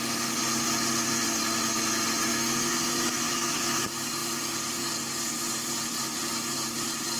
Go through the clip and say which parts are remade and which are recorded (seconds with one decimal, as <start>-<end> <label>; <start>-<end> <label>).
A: 0.0-2.3 recorded; 2.3-3.8 remade; 3.8-7.2 recorded